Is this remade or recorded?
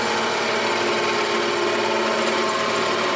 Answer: recorded